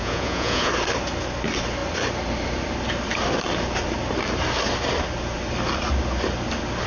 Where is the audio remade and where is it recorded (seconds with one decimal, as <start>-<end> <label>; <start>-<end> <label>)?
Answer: 0.0-0.7 remade; 0.7-6.9 recorded